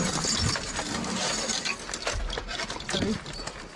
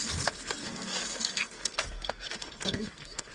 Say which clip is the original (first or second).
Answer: first